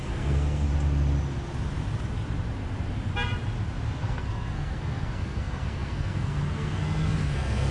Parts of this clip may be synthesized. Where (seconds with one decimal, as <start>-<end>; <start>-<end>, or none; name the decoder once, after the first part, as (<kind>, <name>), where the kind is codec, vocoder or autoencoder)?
0.0-0.7 (codec, SNAC); 4.0-7.7